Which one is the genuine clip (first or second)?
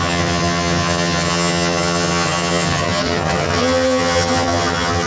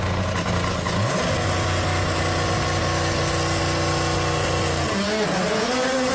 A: second